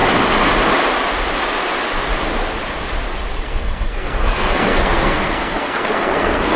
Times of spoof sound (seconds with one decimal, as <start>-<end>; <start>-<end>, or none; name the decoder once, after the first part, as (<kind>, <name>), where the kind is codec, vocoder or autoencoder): 3.4-6.6 (codec, SNAC)